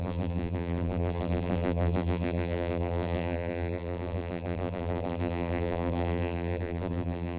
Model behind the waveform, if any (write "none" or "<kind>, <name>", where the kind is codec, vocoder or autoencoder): vocoder, BigVGAN v2